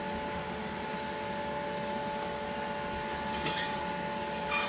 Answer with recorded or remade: recorded